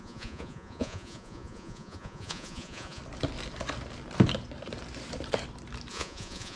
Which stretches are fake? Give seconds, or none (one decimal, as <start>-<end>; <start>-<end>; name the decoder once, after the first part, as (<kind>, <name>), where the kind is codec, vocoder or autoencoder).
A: 0.0-3.0 (vocoder, Vocos); 5.9-6.6